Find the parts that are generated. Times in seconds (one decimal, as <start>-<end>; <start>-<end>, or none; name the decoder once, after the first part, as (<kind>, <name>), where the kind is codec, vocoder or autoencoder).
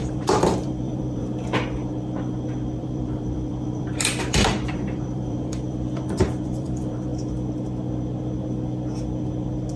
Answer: 0.0-1.2 (vocoder, BigVGAN v2); 2.8-7.1